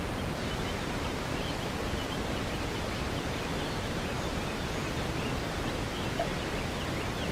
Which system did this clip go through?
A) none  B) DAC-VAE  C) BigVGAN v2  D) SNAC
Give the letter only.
A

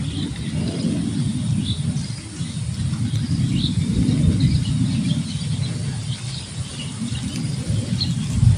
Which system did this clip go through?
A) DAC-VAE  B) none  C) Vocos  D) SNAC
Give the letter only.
B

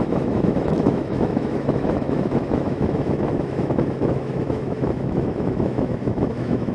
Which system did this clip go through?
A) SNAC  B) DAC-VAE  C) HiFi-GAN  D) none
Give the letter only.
B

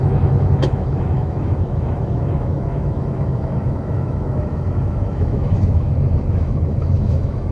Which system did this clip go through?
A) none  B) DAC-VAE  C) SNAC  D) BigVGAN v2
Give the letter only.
B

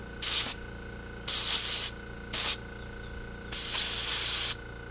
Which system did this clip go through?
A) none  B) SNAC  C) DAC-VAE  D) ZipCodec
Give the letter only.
A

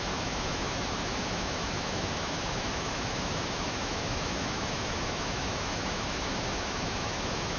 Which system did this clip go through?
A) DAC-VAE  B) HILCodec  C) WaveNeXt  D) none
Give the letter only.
A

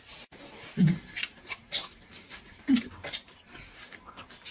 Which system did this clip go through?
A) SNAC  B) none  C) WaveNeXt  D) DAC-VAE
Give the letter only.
B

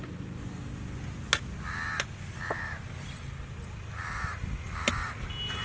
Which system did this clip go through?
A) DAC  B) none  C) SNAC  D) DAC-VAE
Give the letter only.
B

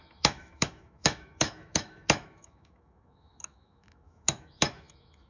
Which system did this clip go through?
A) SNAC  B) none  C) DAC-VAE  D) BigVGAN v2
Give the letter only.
C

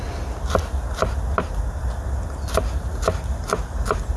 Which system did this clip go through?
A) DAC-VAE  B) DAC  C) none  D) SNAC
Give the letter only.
C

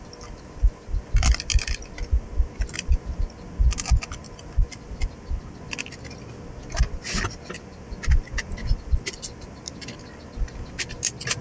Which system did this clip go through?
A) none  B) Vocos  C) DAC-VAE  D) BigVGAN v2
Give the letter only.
A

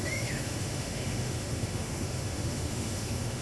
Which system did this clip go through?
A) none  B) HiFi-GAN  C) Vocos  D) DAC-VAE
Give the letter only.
D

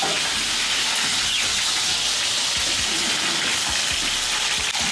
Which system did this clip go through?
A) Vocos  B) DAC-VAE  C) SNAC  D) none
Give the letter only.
D